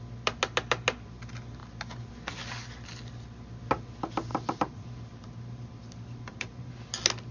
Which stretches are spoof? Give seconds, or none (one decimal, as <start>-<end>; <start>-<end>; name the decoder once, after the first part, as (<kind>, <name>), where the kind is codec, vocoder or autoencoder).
4.3-6.7 (vocoder, BigVGAN v2)

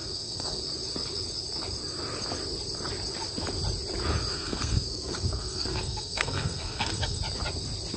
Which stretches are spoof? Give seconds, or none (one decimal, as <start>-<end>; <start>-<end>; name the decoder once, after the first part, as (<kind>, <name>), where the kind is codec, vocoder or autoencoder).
0.0-0.6 (codec, SNAC); 4.3-7.2

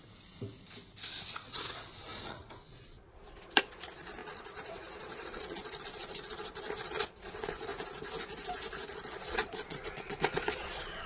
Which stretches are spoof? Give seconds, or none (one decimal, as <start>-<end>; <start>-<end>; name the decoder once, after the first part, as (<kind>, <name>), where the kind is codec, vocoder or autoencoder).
1.5-7.7 (vocoder, Vocos); 8.9-11.1

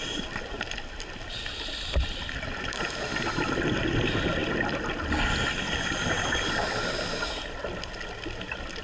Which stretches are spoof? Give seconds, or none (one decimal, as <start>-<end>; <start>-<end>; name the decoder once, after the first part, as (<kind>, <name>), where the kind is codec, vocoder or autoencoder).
none

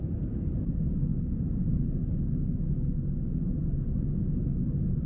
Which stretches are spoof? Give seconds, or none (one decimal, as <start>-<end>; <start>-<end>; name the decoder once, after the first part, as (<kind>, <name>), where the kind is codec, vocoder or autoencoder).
none